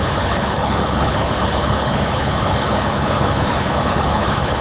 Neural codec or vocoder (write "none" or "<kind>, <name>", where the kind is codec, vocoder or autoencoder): codec, HILCodec